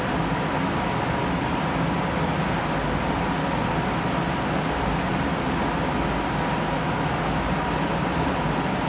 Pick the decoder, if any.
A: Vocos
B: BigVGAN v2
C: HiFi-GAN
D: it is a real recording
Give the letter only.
D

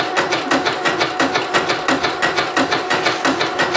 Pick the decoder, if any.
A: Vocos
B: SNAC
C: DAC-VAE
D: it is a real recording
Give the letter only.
D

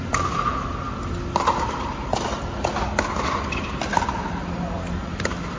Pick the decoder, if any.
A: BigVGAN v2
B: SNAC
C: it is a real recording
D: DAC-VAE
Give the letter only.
C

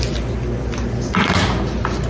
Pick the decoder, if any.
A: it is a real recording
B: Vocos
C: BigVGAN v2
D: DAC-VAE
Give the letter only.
A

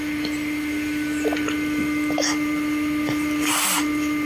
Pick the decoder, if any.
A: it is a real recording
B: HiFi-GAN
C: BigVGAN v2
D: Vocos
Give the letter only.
C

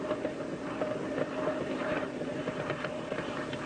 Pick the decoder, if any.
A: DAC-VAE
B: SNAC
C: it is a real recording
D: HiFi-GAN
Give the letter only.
C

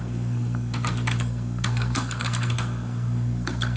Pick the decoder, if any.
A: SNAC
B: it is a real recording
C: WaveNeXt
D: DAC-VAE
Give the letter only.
A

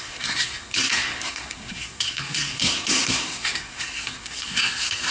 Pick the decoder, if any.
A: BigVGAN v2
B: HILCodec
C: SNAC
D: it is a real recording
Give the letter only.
C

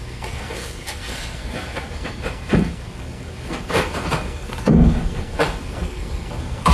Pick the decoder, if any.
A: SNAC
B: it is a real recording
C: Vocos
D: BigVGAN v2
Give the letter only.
A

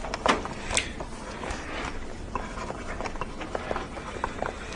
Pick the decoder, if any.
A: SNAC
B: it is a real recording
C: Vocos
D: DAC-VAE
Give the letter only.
B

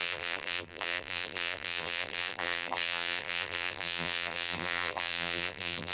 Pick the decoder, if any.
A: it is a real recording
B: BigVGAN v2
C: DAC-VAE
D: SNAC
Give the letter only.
B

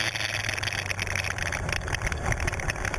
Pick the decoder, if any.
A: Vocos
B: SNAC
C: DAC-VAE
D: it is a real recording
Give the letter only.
D